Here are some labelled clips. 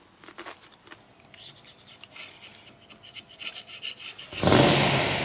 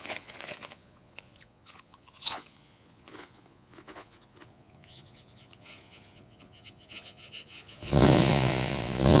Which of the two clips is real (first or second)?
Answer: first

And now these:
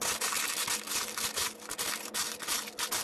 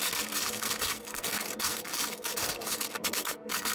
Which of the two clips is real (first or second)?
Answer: first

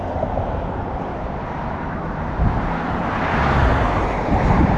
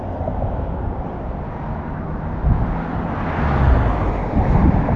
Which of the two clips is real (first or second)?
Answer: second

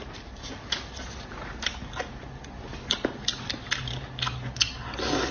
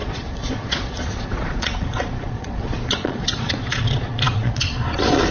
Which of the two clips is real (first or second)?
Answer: first